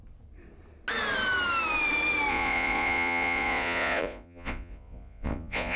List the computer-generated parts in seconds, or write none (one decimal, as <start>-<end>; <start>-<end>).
2.3-5.8